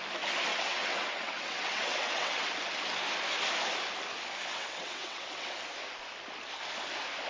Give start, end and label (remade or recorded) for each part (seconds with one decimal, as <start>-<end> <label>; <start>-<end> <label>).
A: 0.0-0.5 recorded; 0.5-2.5 remade; 2.5-4.5 recorded; 4.5-5.6 remade; 5.6-7.3 recorded